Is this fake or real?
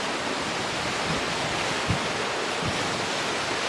real